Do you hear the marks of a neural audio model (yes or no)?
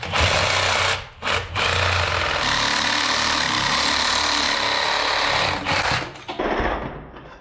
no